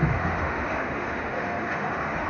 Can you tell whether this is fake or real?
fake